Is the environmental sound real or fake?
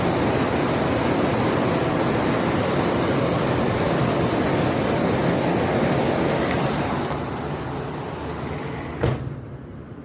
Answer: real